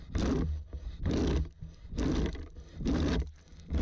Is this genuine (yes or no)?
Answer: yes